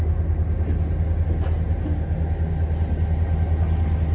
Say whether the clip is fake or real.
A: real